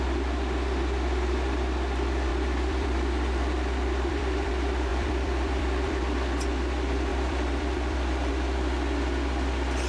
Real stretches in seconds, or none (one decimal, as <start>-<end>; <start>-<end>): 0.0-2.3; 4.5-4.9; 6.0-7.1; 8.3-9.9